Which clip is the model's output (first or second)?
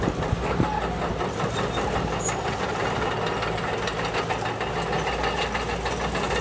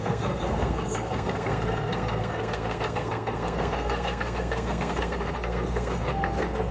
second